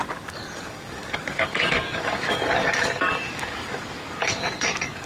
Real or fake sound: fake